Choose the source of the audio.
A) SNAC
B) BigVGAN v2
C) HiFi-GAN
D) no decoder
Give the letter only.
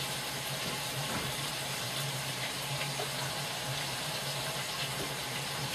B